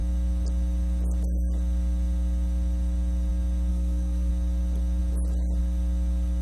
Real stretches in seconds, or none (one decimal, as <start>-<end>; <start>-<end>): 0.0-3.7; 4.3-6.4